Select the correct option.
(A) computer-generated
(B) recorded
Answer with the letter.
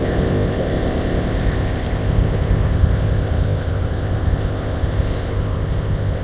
A